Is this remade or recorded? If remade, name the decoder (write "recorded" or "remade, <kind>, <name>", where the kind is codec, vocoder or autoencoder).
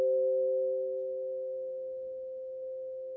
recorded